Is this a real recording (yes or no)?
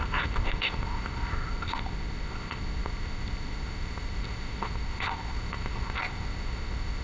no